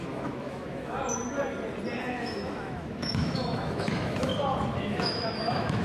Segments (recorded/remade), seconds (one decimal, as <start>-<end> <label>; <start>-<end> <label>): 0.0-1.0 remade; 1.0-2.2 recorded; 2.2-4.3 remade; 4.3-4.8 recorded; 4.8-5.8 remade